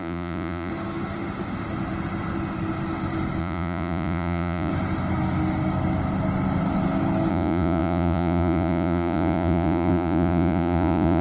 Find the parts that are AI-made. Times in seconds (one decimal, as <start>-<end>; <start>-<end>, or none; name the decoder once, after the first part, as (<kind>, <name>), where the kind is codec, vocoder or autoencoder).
0.0-0.7 (vocoder, Vocos); 3.4-4.7; 7.3-11.2